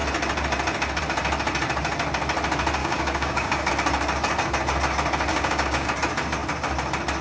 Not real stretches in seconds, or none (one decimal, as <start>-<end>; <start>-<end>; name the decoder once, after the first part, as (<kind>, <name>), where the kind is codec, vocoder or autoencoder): 2.8-3.7 (codec, DAC); 5.3-5.9

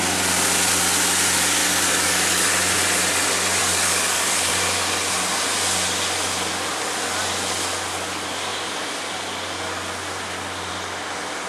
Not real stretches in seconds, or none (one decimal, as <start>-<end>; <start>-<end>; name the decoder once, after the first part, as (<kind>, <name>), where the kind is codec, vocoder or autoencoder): 1.6-2.5 (codec, DAC); 3.6-4.5

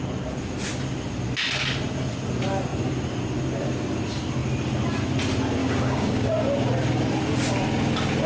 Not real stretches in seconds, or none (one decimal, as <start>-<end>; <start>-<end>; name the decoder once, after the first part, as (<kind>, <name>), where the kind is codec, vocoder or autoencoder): 5.6-6.3 (codec, DAC)

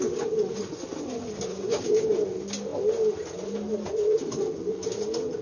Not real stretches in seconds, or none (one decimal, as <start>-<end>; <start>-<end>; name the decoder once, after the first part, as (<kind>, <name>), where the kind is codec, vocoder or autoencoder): 1.5-2.1 (codec, DAC)

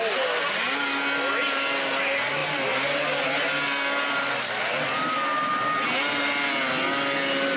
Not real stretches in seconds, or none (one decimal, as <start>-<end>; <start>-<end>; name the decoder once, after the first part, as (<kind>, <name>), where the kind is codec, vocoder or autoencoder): none

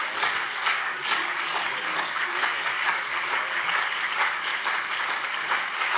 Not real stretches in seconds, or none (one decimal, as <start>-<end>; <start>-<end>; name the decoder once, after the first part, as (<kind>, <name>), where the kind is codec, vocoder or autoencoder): 0.0-4.5 (codec, DAC); 5.1-6.0